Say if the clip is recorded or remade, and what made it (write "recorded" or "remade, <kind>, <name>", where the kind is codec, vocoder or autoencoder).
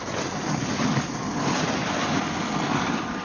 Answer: recorded